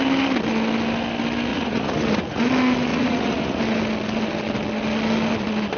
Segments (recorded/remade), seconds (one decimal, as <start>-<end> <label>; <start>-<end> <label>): 0.0-1.5 recorded; 1.5-2.4 remade; 2.4-2.9 recorded; 2.9-3.6 remade; 3.6-5.8 recorded